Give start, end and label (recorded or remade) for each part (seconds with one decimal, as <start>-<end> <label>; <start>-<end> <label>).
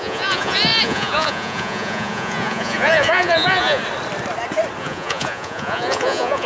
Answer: 0.0-3.8 remade; 3.8-4.8 recorded; 4.8-6.5 remade